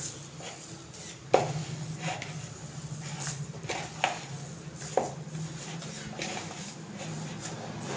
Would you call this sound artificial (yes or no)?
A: no